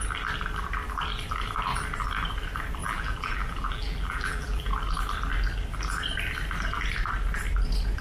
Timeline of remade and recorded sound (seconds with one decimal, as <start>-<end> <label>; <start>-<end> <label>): 0.0-2.8 recorded; 2.8-4.7 remade; 4.7-8.0 recorded